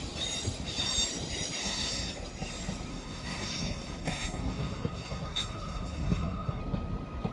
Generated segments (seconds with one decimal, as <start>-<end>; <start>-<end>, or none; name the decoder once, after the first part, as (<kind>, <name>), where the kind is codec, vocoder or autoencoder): 1.6-2.1 (codec, SNAC); 2.9-6.6